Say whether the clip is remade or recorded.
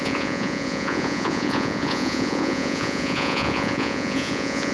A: remade